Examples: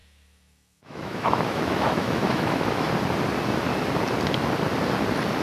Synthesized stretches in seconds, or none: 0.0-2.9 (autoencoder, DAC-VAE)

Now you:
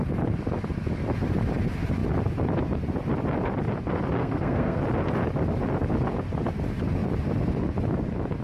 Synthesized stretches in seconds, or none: 4.2-4.8 (codec, SNAC)

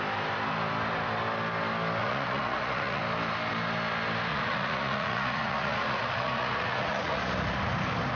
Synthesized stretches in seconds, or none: 2.0-3.0 (vocoder, Vocos); 4.3-7.2

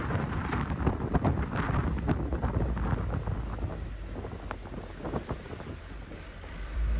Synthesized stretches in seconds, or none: 0.0-1.8 (vocoder, BigVGAN v2); 5.4-7.0

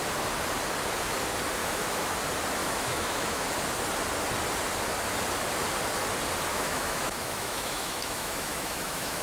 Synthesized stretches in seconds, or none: 1.6-2.1 (autoencoder, DAC-VAE); 2.6-3.5; 6.5-9.2

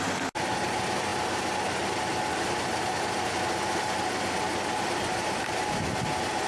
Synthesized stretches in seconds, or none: none